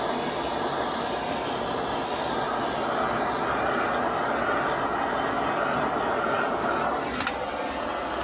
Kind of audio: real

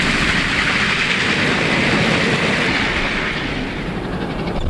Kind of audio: fake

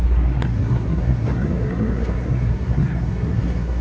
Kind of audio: fake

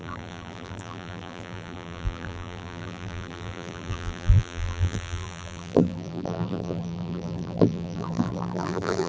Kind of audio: fake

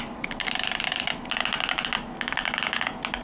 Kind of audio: real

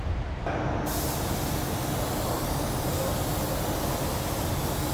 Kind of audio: real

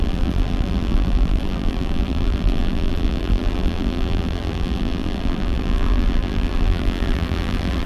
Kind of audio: fake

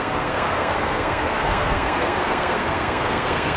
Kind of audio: fake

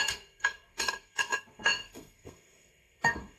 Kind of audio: fake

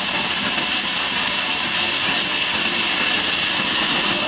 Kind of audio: real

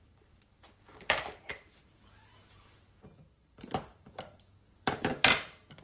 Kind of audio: fake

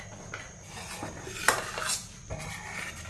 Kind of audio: real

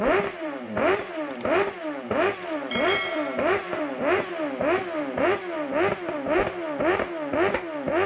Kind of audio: fake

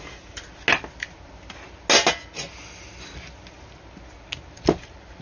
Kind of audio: real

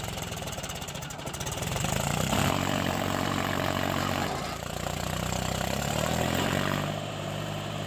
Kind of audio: fake